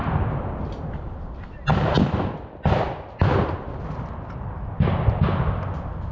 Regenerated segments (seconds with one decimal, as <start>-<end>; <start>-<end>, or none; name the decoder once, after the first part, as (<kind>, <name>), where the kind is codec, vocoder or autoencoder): none